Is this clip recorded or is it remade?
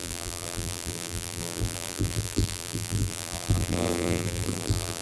remade